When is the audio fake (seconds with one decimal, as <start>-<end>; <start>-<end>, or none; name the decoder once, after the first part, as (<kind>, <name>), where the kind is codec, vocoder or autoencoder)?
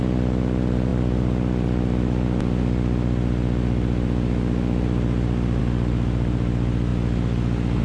none